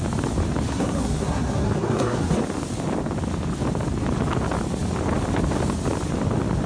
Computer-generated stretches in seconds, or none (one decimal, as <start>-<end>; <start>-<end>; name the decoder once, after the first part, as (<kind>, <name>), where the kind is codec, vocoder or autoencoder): 0.7-2.4 (codec, SNAC)